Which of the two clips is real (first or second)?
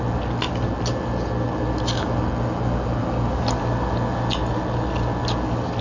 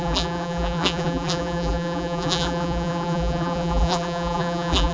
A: first